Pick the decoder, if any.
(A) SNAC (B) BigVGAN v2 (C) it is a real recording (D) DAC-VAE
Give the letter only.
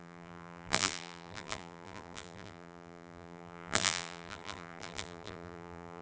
B